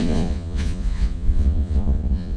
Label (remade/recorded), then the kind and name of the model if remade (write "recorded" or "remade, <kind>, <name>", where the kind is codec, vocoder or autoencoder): remade, vocoder, Vocos